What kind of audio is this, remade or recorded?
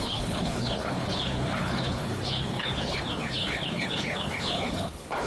remade